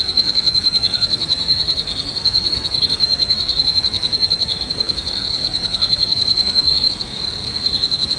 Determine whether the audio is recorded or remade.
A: remade